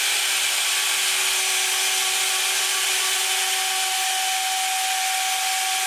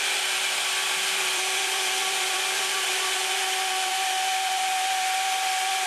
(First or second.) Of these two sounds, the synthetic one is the second